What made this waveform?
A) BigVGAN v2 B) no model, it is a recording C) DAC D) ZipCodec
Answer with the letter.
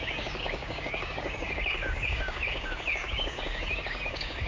C